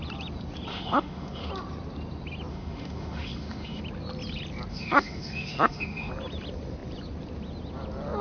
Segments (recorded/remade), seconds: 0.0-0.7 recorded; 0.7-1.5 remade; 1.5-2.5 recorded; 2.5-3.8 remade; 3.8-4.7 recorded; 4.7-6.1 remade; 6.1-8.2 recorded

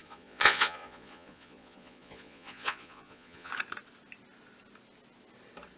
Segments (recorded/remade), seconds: 0.0-3.5 remade; 3.5-5.8 recorded

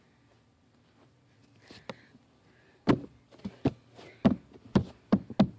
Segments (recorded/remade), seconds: 0.0-5.6 recorded

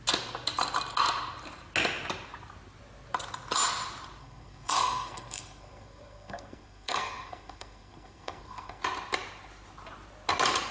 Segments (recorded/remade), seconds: 0.0-4.2 recorded; 4.2-8.8 remade; 8.8-10.7 recorded

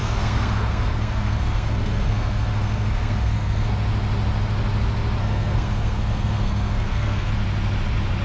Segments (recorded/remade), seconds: 0.0-3.7 remade; 3.7-5.2 recorded; 5.2-7.3 remade; 7.3-8.2 recorded